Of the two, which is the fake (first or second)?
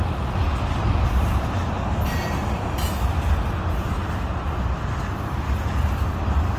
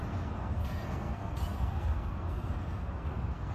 second